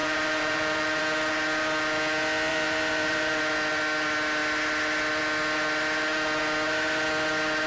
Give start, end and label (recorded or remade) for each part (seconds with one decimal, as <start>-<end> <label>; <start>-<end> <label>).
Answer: 0.0-1.0 remade; 1.0-2.5 recorded; 2.5-3.4 remade; 3.4-7.7 recorded